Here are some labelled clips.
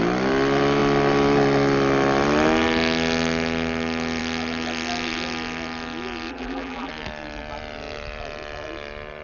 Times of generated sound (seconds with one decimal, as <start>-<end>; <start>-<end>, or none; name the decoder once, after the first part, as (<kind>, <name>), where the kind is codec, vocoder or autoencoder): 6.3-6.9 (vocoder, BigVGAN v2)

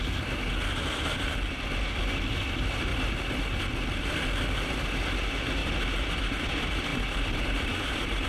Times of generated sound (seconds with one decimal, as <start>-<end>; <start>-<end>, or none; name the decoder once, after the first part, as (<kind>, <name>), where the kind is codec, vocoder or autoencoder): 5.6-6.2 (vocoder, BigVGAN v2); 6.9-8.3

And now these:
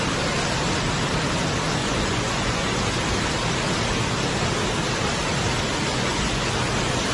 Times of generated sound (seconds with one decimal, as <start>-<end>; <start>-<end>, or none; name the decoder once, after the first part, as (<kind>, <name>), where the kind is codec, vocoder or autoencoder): 1.8-2.8 (vocoder, Vocos); 5.9-6.5